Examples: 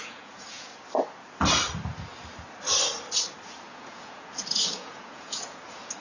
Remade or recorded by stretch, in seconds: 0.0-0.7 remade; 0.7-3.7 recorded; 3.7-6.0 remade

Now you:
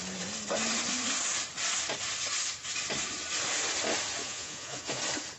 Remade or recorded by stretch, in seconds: 0.0-4.2 recorded; 4.2-5.0 remade; 5.0-5.4 recorded

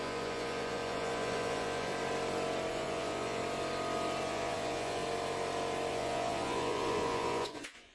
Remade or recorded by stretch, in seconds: 0.0-1.9 remade; 1.9-2.7 recorded; 2.7-3.4 remade; 3.4-4.3 recorded; 4.3-5.0 remade; 5.0-5.9 recorded; 5.9-7.9 remade

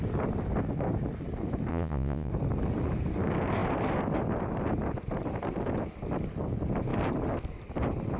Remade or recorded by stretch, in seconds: 0.0-1.7 recorded; 1.7-2.3 remade; 2.3-8.2 recorded

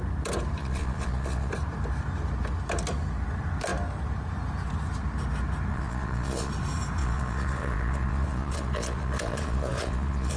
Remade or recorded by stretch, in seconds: 0.0-0.6 recorded; 0.6-1.5 remade; 1.5-5.7 recorded; 5.7-6.5 remade; 6.5-7.0 recorded; 7.0-10.4 remade

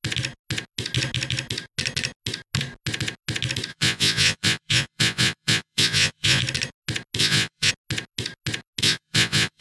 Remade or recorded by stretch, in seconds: 0.0-3.7 recorded; 3.7-6.4 remade; 6.4-7.2 recorded; 7.2-7.7 remade; 7.7-8.8 recorded; 8.8-9.6 remade